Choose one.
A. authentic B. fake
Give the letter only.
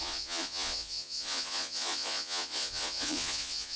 B